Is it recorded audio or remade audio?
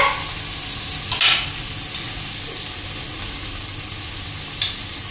recorded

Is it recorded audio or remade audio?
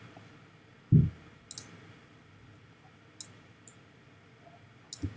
recorded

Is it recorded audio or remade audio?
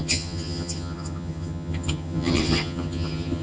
remade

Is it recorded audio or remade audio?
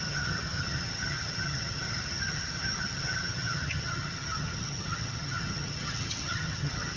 remade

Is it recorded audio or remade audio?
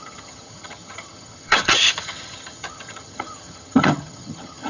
remade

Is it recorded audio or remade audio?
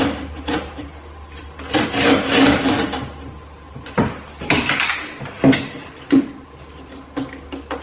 recorded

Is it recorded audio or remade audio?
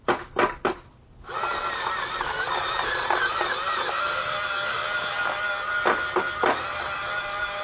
recorded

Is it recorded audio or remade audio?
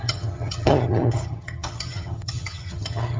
remade